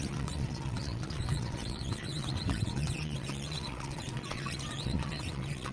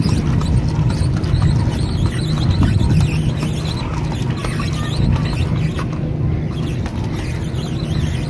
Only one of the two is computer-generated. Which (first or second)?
first